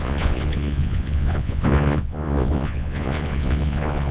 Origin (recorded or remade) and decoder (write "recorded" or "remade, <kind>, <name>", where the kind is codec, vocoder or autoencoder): remade, vocoder, Vocos